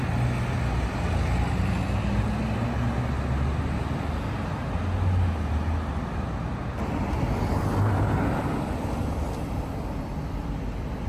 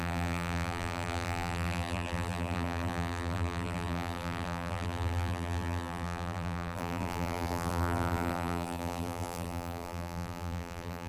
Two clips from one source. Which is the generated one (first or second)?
second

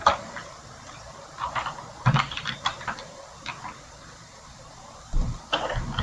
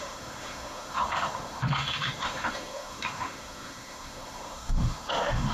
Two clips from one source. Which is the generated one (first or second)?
second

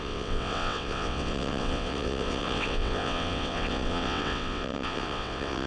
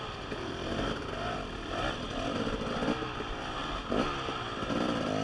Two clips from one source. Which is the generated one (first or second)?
first